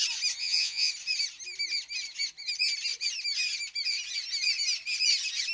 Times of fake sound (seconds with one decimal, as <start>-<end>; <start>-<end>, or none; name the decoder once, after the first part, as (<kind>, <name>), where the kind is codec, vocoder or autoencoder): 0.4-0.9 (vocoder, Vocos)